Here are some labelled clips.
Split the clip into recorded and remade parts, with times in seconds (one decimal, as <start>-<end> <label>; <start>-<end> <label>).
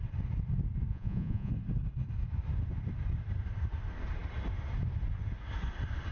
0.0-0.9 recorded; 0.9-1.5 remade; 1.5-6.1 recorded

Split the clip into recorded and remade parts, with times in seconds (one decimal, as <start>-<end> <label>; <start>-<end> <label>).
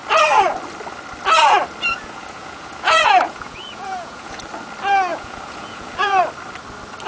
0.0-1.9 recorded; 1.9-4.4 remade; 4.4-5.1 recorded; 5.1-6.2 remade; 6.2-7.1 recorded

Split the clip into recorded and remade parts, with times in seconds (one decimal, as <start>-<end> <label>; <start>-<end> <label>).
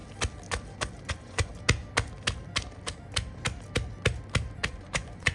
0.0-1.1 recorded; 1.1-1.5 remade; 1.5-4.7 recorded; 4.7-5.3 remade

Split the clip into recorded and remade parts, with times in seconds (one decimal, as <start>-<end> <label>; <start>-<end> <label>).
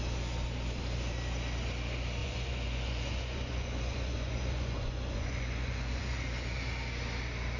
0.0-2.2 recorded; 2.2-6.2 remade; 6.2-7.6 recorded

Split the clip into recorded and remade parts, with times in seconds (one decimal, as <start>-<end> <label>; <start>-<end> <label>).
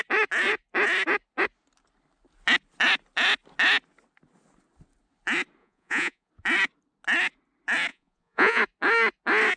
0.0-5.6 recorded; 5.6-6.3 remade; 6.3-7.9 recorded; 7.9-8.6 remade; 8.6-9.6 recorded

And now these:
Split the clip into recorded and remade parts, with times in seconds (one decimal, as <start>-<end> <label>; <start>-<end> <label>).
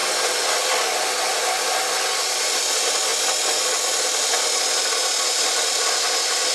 0.0-6.5 recorded